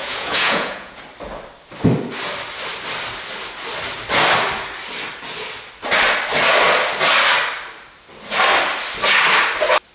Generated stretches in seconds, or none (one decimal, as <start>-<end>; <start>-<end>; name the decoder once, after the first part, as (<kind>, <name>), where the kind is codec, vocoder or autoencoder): 0.0-1.0 (vocoder, Vocos)